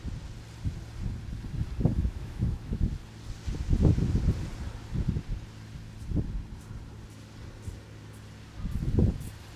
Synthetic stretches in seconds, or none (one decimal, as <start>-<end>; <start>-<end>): 2.0-2.8